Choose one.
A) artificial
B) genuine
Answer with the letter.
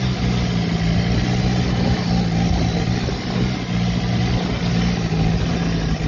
B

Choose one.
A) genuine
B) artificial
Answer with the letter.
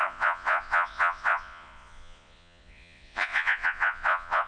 B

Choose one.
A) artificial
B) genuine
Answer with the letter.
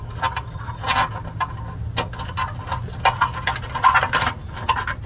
B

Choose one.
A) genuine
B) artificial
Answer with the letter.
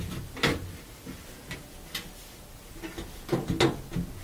A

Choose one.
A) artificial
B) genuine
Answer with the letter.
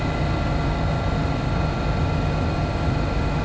B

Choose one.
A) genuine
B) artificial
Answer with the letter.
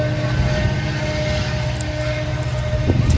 A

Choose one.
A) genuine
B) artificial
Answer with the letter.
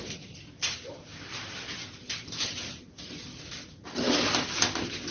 A